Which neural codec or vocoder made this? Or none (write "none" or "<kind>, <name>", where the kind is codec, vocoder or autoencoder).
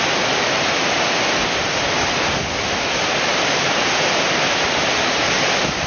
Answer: none